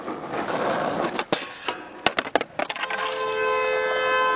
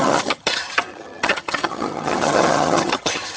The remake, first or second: second